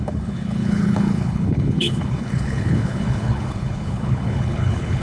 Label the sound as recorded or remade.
remade